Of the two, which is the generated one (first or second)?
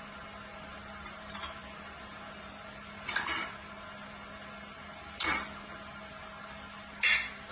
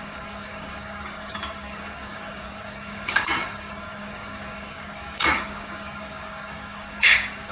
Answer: second